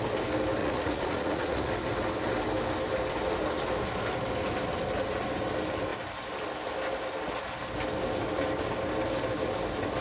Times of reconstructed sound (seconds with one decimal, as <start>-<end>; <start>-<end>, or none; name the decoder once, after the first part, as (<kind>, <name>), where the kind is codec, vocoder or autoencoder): 0.6-1.7 (vocoder, Vocos)